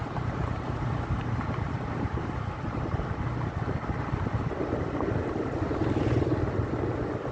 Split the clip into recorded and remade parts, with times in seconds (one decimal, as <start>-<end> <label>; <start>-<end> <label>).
0.0-3.2 remade; 3.2-7.3 recorded